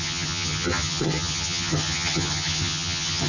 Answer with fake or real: fake